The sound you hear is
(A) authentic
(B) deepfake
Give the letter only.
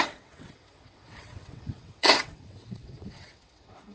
B